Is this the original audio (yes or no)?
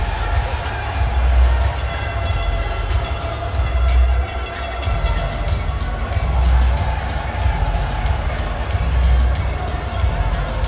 yes